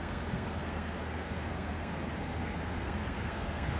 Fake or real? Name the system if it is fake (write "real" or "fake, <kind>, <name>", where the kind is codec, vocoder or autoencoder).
fake, codec, SNAC